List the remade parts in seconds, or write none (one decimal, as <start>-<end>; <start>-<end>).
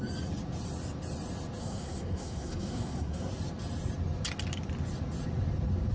1.6-3.3